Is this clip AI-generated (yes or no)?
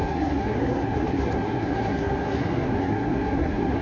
yes